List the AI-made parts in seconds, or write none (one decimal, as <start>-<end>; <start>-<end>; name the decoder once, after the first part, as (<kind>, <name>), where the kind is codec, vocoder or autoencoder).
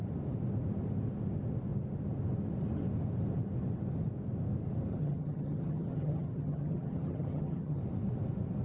4.9-7.8 (vocoder, HiFi-GAN)